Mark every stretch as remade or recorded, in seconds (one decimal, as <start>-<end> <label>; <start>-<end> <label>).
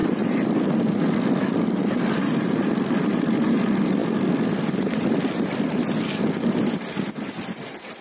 0.0-1.6 remade; 1.6-8.0 recorded